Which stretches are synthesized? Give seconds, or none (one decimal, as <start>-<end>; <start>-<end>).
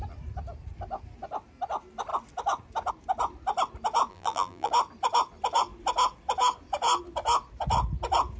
4.1-4.7